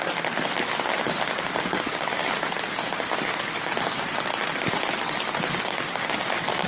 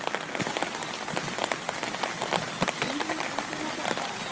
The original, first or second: second